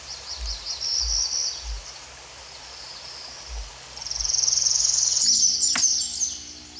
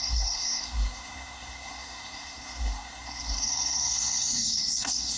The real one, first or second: first